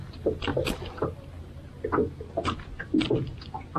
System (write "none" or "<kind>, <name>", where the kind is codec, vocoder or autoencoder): none